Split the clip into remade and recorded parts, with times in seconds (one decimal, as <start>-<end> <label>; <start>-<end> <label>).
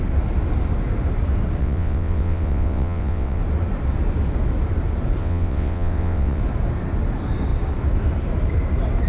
0.0-1.6 recorded; 1.6-3.4 remade; 3.4-5.2 recorded; 5.2-6.4 remade; 6.4-9.1 recorded